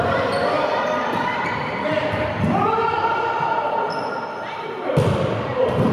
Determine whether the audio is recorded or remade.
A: remade